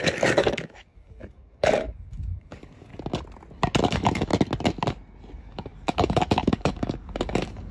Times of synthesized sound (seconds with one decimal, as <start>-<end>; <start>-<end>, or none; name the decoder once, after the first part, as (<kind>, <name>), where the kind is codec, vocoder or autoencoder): 0.0-2.9 (codec, DAC); 3.9-4.3; 5.4-7.7